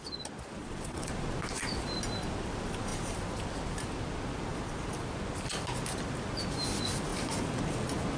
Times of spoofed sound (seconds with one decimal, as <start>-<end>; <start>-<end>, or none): 0.6-1.1